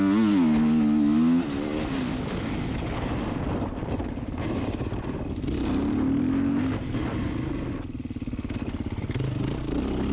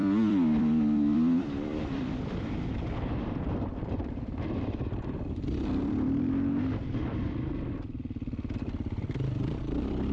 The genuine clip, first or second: first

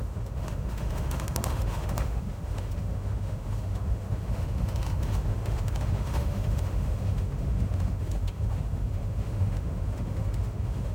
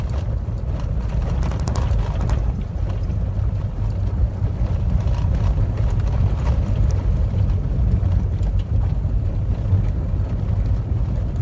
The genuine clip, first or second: second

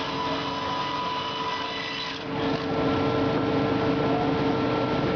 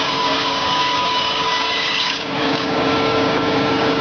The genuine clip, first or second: first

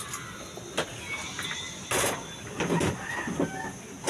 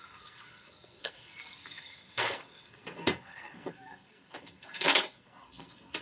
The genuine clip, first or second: first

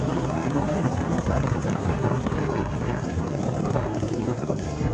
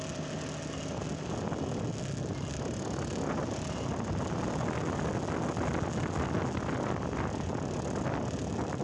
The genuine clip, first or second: second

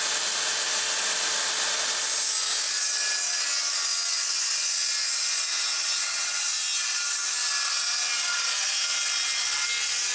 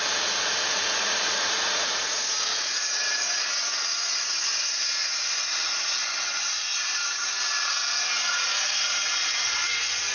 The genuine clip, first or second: first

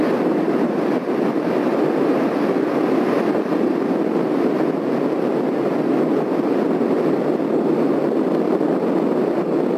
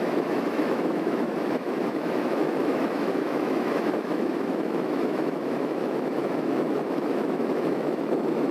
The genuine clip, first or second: first